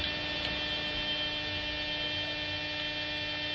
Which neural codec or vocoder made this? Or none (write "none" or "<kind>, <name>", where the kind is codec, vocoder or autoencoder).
none